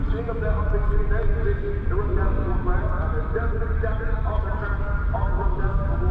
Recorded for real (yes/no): yes